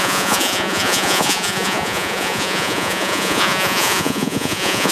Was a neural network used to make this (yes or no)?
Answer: yes